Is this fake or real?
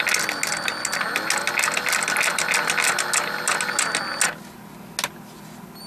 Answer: real